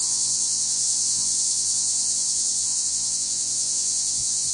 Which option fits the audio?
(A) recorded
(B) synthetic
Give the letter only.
B